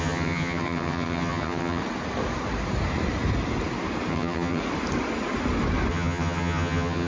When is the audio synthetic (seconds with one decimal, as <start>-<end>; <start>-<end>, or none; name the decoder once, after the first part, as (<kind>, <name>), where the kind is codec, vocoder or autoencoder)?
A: 0.0-1.8 (vocoder, HiFi-GAN); 4.1-4.6; 5.9-7.1